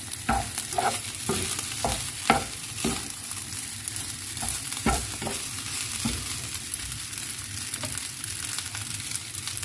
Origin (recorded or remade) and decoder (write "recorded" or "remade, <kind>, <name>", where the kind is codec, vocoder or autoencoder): remade, vocoder, BigVGAN v2